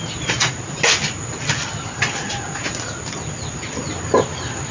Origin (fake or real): real